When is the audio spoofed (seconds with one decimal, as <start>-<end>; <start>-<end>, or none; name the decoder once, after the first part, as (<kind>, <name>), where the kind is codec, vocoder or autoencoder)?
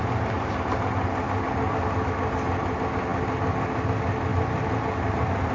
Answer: none